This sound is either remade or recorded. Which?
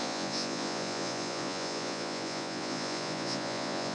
remade